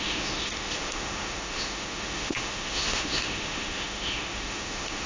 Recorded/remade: remade